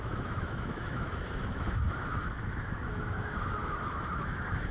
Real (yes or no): no